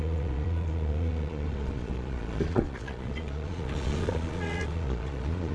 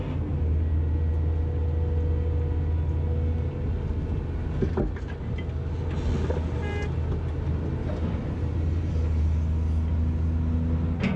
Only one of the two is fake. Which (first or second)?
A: first